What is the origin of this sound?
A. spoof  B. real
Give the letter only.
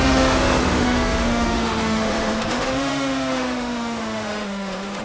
A